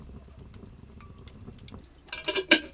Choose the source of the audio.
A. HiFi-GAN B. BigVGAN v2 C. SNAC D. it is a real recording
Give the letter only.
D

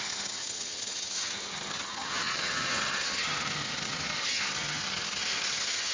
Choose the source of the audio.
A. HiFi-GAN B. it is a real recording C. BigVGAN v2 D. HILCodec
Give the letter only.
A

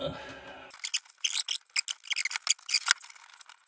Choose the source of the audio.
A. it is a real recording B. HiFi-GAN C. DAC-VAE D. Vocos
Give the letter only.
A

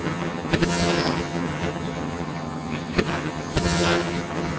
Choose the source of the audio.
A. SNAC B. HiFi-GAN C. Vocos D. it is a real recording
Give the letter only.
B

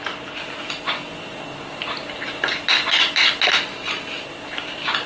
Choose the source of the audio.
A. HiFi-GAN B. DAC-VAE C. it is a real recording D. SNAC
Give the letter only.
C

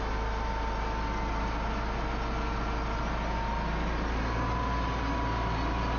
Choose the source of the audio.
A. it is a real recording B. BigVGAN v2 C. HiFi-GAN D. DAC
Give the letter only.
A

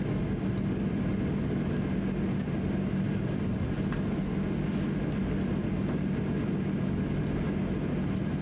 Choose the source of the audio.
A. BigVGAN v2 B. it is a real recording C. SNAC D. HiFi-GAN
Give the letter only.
B